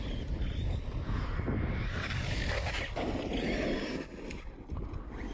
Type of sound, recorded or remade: recorded